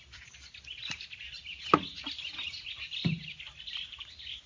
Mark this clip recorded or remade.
recorded